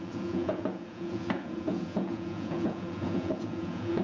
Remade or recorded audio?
remade